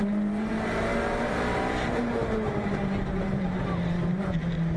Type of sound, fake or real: fake